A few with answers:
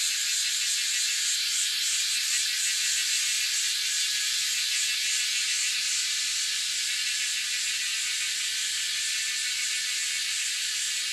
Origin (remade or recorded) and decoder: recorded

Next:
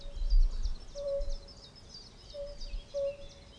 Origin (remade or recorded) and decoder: recorded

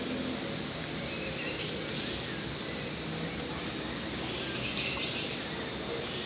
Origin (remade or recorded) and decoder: recorded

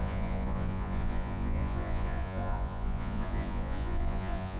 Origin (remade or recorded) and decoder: remade, vocoder, Vocos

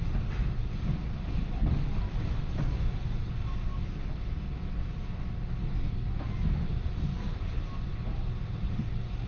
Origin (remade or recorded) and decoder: recorded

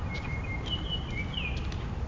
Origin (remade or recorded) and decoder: recorded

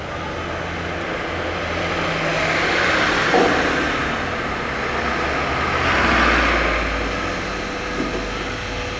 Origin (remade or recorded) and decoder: recorded